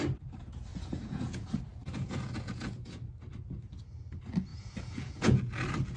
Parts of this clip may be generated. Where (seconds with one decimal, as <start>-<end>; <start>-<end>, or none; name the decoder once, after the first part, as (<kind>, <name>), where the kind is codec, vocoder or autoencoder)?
0.7-1.6 (vocoder, Vocos); 2.0-3.0; 4.5-5.4